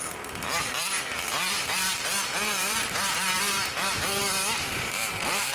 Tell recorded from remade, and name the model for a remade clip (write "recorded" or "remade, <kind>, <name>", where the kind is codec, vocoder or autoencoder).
remade, vocoder, BigVGAN v2